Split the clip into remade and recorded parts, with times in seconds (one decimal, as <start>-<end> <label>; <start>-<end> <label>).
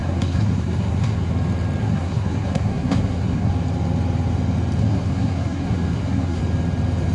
0.0-1.3 remade; 1.3-1.8 recorded; 1.8-3.5 remade; 3.5-4.8 recorded; 4.8-6.4 remade; 6.4-7.1 recorded